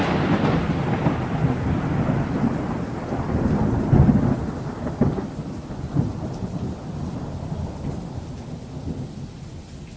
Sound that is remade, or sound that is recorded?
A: recorded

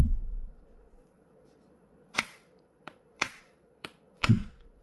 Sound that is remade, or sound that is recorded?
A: remade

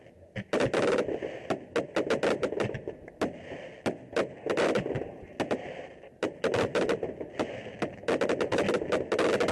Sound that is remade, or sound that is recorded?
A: recorded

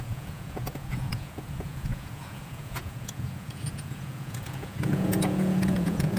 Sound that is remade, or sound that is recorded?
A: remade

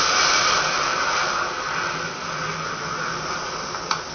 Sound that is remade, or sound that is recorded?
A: recorded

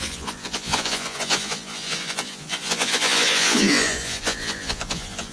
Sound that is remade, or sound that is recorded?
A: remade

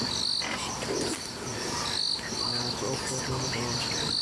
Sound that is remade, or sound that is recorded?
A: recorded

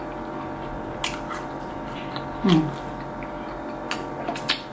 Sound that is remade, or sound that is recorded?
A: recorded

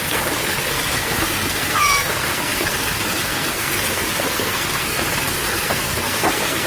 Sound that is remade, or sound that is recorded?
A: remade